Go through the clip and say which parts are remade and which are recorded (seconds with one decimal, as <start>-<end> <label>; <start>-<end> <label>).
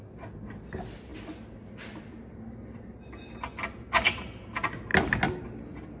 0.0-6.0 recorded